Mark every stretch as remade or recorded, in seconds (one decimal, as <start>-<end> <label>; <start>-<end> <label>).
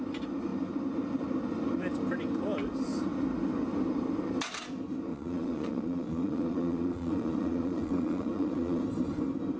0.0-5.1 recorded; 5.1-8.8 remade; 8.8-9.6 recorded